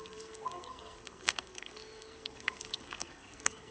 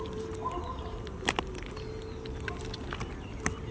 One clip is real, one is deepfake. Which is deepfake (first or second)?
first